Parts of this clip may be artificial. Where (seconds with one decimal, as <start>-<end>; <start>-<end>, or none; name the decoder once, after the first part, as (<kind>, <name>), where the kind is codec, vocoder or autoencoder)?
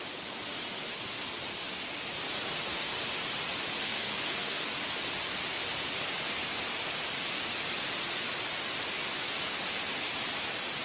3.8-4.7 (codec, SNAC)